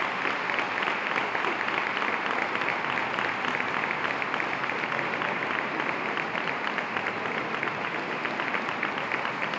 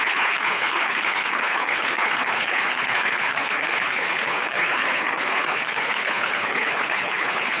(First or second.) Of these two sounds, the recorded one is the first